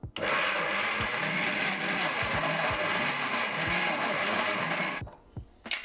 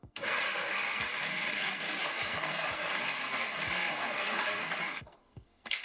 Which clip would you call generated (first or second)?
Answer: second